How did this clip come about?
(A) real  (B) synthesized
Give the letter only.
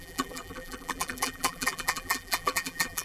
B